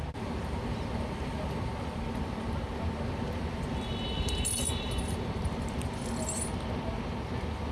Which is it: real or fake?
real